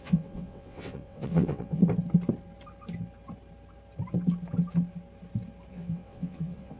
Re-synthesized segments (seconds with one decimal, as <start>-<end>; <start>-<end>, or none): 0.0-1.8; 5.7-6.8